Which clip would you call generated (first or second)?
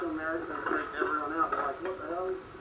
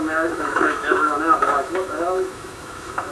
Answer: second